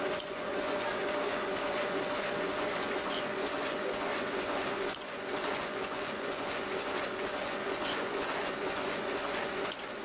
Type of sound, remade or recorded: remade